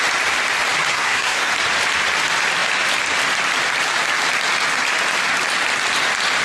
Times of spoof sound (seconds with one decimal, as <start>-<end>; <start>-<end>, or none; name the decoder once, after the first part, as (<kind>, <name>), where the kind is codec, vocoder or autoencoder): 0.9-1.5 (codec, SNAC)